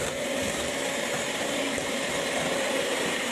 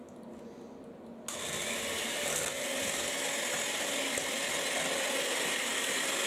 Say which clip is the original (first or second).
second